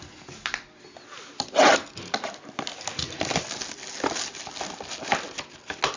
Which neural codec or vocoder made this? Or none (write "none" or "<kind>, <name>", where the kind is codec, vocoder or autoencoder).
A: none